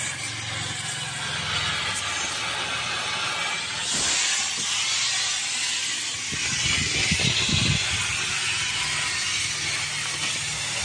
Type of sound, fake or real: real